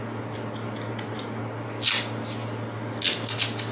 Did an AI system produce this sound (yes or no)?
no